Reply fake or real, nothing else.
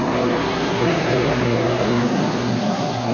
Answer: fake